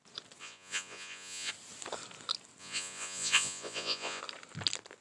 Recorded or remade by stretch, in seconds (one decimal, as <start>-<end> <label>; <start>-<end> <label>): 0.0-0.4 recorded; 0.4-1.5 remade; 1.5-2.6 recorded; 2.6-4.2 remade; 4.2-5.0 recorded